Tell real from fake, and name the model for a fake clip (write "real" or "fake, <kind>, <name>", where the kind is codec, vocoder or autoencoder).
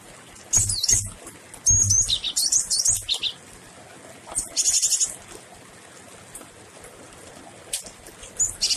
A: real